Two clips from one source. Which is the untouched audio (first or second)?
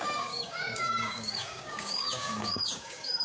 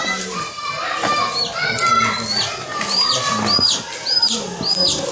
second